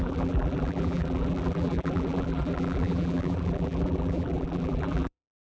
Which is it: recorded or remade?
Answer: remade